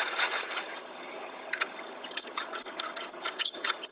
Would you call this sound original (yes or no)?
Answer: no